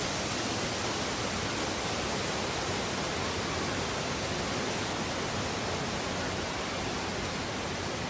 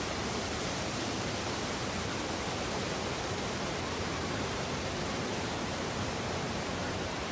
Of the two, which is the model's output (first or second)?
second